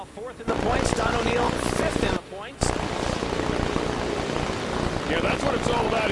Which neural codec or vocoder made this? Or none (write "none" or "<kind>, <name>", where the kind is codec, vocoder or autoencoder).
none